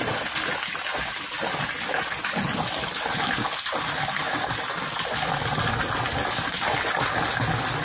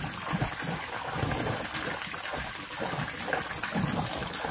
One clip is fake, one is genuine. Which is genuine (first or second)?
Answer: first